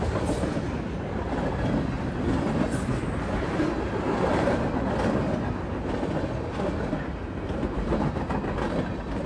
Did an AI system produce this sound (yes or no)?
no